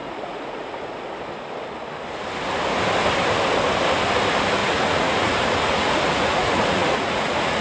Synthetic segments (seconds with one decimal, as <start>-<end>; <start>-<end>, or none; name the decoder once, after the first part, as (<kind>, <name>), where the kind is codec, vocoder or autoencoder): 0.0-1.0 (vocoder, Vocos); 4.6-7.6